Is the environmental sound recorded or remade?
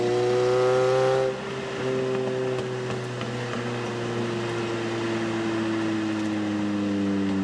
recorded